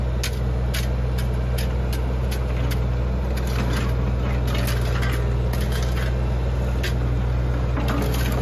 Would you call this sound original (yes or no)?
yes